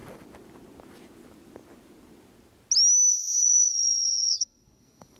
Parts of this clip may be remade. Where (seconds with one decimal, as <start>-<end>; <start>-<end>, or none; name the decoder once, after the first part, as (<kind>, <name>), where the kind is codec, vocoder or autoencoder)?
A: 3.1-5.2 (codec, SNAC)